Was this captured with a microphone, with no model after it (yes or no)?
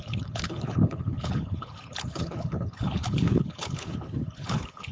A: no